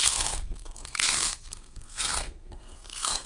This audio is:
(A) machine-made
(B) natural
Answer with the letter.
A